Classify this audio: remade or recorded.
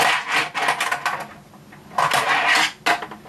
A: recorded